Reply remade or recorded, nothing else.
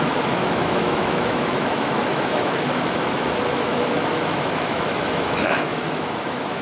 remade